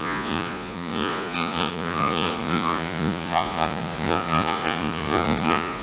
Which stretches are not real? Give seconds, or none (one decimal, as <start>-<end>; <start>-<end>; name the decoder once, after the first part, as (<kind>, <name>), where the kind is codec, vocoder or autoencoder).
0.0-5.8 (vocoder, Vocos)